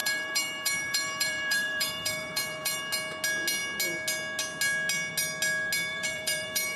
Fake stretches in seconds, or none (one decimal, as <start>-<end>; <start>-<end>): 0.0-2.8; 5.9-6.8